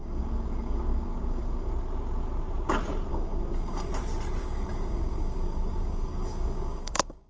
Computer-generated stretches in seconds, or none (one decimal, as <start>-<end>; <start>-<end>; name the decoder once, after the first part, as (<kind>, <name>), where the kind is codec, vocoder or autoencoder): 0.0-1.7 (codec, DAC); 3.1-3.9; 4.4-7.3